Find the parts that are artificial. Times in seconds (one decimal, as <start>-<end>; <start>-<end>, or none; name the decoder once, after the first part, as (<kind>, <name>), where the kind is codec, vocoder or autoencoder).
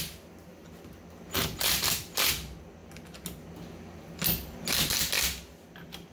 0.5-2.3 (vocoder, BigVGAN v2)